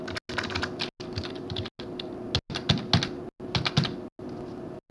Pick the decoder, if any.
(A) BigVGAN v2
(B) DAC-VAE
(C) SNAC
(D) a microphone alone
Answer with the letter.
D